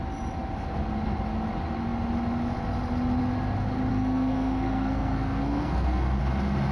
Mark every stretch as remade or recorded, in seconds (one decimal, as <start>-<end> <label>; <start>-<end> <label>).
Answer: 0.0-3.9 recorded; 3.9-6.2 remade; 6.2-6.7 recorded